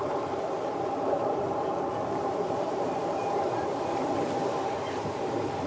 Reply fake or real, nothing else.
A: fake